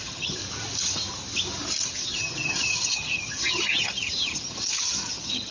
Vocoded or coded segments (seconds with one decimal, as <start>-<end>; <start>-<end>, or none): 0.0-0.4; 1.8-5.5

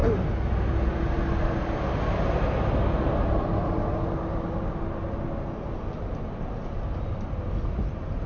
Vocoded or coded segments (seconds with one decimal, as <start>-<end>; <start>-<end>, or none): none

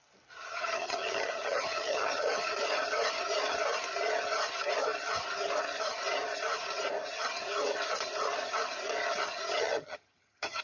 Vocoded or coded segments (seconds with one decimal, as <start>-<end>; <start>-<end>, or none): 0.5-2.5; 9.3-10.6

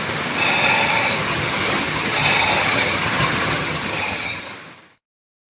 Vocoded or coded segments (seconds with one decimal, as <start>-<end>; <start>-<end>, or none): 1.2-4.5

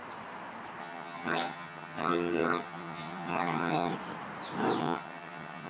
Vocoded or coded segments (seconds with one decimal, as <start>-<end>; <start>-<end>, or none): 0.8-3.9; 4.8-5.7

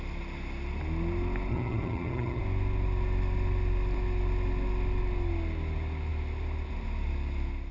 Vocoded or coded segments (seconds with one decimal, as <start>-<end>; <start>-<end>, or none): 1.5-2.4

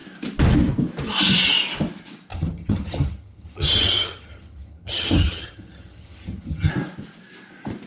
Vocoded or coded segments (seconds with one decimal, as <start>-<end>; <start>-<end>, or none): 2.3-6.7

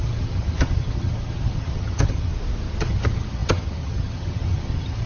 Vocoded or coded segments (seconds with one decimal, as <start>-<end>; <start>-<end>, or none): 0.0-2.3; 2.8-5.1